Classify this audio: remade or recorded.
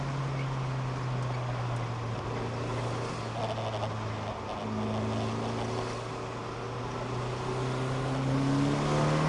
recorded